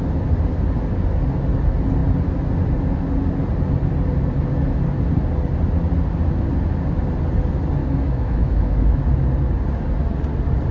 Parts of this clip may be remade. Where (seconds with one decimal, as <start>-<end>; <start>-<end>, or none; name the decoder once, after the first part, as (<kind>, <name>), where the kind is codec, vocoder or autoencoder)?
7.8-9.0 (autoencoder, DAC-VAE)